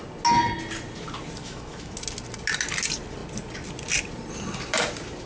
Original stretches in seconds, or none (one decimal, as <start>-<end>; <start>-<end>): 0.0-1.4; 1.9-5.3